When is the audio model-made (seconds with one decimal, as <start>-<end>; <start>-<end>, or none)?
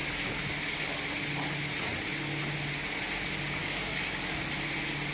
3.6-4.2